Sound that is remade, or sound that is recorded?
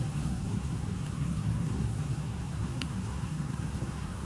remade